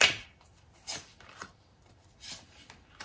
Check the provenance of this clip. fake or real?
fake